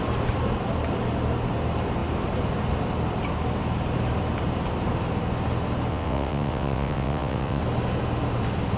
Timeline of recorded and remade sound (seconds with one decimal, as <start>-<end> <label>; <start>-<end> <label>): 0.0-5.9 recorded; 5.9-7.6 remade; 7.6-8.8 recorded